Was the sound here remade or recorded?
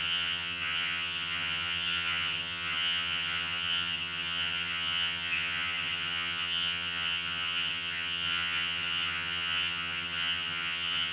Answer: remade